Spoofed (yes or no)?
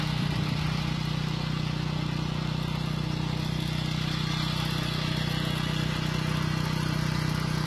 no